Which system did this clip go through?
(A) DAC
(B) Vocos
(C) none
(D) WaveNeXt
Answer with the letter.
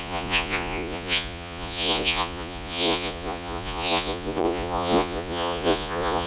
B